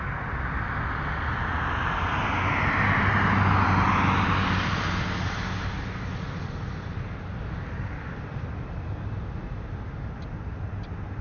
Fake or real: real